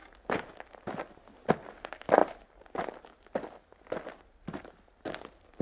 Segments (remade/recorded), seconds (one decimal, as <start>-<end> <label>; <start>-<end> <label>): 0.0-5.6 recorded